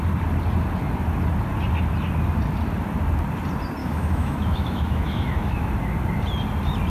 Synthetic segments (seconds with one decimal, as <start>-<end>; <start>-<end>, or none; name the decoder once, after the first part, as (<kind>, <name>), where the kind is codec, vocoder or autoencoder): 3.8-5.7 (autoencoder, DAC-VAE)